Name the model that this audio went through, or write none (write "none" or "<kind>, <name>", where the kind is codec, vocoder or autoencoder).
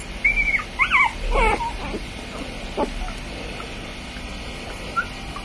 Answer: none